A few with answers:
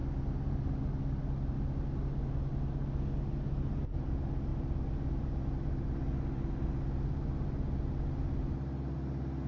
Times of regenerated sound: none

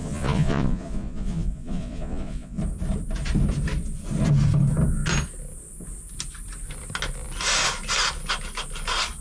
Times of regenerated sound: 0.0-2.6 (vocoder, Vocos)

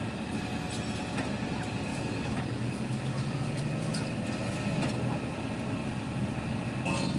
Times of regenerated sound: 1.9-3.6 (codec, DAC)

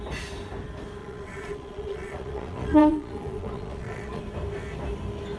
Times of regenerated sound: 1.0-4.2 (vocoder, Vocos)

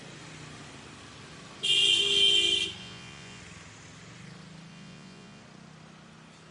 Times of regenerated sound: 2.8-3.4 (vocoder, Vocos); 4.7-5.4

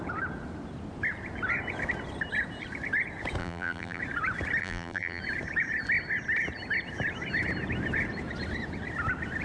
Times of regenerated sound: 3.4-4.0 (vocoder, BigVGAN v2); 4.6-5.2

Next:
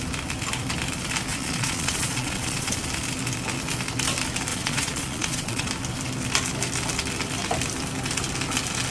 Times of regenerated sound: 1.3-2.7 (vocoder, Vocos); 4.5-5.7